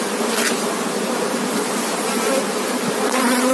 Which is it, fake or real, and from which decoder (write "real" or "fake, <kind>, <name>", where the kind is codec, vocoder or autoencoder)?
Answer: fake, vocoder, BigVGAN v2